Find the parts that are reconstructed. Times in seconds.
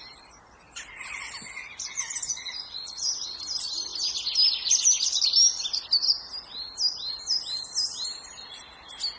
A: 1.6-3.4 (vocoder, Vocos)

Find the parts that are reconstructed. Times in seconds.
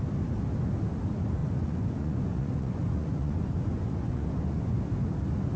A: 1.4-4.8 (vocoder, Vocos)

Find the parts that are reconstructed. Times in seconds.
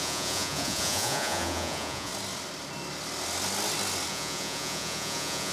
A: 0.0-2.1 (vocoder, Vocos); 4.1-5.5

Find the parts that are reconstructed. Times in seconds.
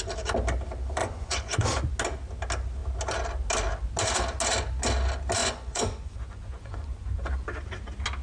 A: 1.0-1.9 (vocoder, Vocos); 5.4-7.3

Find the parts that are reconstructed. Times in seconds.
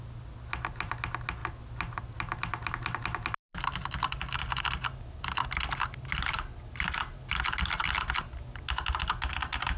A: none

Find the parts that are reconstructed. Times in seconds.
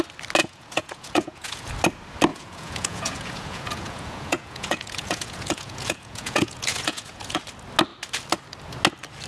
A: 0.4-1.7 (vocoder, Vocos); 2.3-7.4